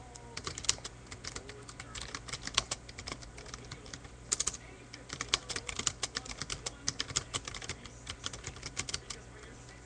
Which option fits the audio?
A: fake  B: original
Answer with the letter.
B